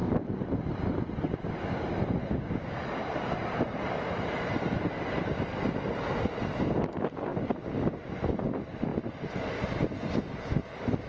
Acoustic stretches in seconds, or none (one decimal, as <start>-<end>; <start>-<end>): 0.0-2.2; 2.8-11.1